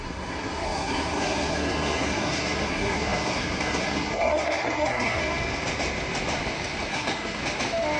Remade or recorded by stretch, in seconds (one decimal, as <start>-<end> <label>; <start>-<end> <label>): 0.0-5.2 remade; 5.2-6.9 recorded; 6.9-7.4 remade; 7.4-8.0 recorded

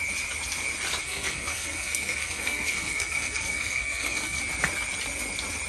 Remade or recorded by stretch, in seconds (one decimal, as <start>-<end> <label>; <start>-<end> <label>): 0.0-1.0 recorded; 1.0-4.4 remade; 4.4-5.7 recorded

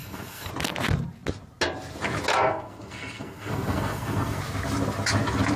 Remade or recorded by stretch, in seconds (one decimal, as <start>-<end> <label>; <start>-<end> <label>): 0.0-0.5 remade; 0.5-2.3 recorded; 2.3-4.4 remade; 4.4-5.6 recorded

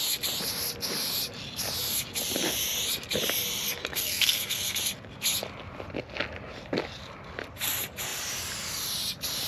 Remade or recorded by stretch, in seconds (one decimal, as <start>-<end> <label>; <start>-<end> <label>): 0.0-3.8 recorded; 3.8-4.8 remade; 4.8-9.5 recorded

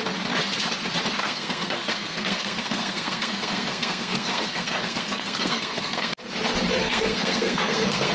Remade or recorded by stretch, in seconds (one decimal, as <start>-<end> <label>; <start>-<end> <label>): 0.0-1.2 recorded; 1.2-6.1 remade; 6.1-6.8 recorded; 6.8-8.1 remade

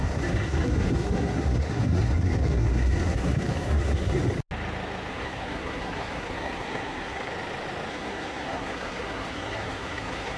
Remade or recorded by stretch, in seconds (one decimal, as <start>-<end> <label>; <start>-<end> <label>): 0.0-4.2 remade; 4.2-5.1 recorded; 5.1-7.3 remade; 7.3-7.9 recorded; 7.9-10.4 remade